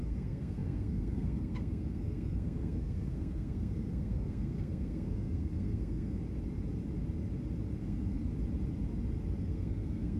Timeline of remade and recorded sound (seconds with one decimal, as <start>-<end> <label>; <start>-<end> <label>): 0.0-6.2 remade; 6.2-7.8 recorded; 7.8-8.3 remade; 8.3-9.4 recorded; 9.4-10.2 remade